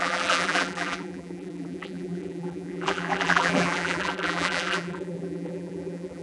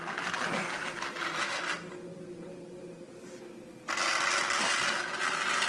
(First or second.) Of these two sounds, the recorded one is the second